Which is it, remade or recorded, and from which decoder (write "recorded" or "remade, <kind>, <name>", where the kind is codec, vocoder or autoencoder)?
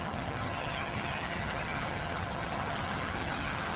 remade, vocoder, HiFi-GAN